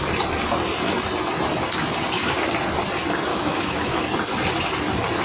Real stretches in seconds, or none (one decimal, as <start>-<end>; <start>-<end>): 0.0-3.3; 4.0-5.2

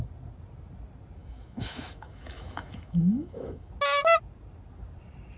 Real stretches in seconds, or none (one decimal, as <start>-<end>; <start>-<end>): 0.0-1.2; 3.7-5.4

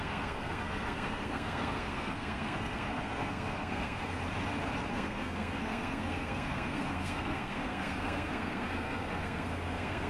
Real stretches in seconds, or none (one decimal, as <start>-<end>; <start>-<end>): 4.2-4.9

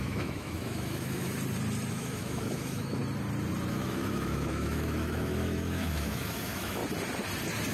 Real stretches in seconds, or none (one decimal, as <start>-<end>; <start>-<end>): 1.3-1.9; 3.0-3.7; 6.8-7.7

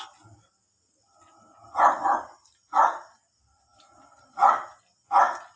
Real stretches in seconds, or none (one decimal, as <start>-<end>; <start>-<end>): 0.0-5.6

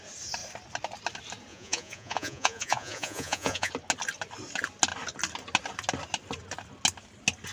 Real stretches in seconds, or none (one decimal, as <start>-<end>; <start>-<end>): 0.0-1.5; 3.7-7.5

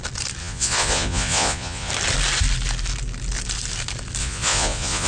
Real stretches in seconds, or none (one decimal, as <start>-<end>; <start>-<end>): 0.0-0.4; 1.9-4.2

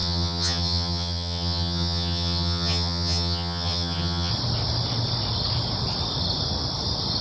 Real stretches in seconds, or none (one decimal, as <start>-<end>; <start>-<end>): 4.3-7.2